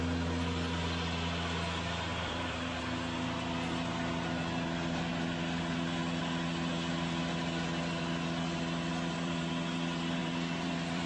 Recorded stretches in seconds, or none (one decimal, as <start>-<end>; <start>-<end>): 0.0-2.1; 2.8-8.9; 9.5-10.2